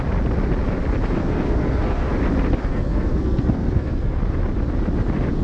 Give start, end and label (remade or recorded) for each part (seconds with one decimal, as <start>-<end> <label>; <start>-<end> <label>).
0.0-1.2 recorded; 1.2-2.1 remade; 2.1-2.7 recorded; 2.7-4.2 remade; 4.2-5.4 recorded

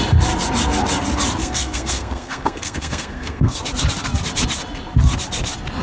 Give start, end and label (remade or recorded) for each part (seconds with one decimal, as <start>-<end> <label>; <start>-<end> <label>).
0.0-1.4 recorded; 1.4-3.6 remade; 3.6-5.8 recorded